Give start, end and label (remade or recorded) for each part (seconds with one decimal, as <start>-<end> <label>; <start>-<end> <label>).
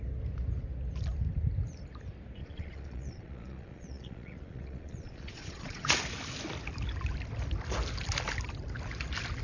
0.0-2.4 recorded; 2.4-5.9 remade; 5.9-9.4 recorded